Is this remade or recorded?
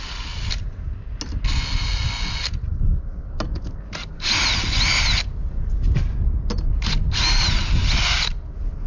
recorded